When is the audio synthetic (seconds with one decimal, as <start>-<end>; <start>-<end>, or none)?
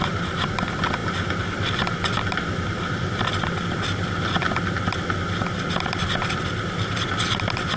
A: none